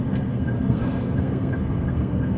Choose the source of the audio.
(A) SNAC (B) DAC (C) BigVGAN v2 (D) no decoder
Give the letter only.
A